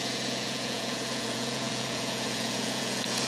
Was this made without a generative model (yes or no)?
no